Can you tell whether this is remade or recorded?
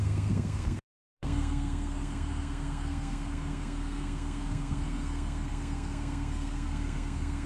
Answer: remade